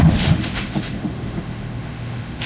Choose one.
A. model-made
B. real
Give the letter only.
A